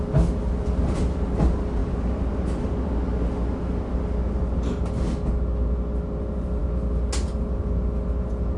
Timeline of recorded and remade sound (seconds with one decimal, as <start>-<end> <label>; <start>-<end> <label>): 0.0-8.6 recorded